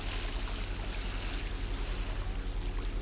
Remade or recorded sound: recorded